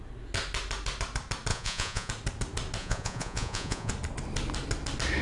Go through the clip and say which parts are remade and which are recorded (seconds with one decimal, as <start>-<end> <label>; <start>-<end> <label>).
0.0-1.5 recorded; 1.5-2.1 remade; 2.1-2.8 recorded; 2.8-3.9 remade; 3.9-5.2 recorded